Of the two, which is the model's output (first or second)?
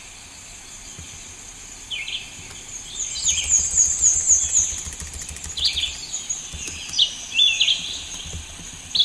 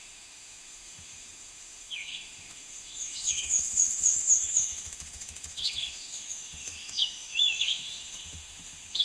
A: second